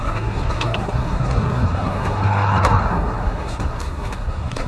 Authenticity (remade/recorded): remade